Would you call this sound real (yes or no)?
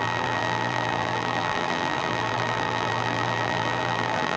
no